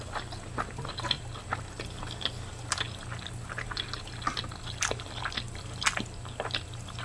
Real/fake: real